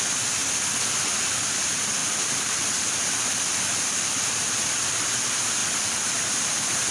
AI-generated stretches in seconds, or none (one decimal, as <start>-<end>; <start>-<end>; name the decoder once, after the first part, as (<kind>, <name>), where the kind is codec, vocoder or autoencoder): 2.0-5.1 (vocoder, BigVGAN v2); 5.6-6.5